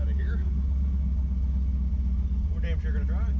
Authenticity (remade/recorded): recorded